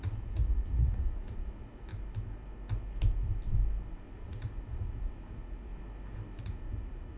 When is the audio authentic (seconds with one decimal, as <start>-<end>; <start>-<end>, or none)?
1.9-3.9; 5.7-6.4